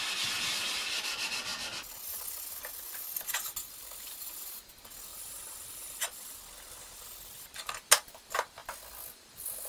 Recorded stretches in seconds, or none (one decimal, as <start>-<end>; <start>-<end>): 0.0-3.6; 4.2-5.1; 7.7-8.6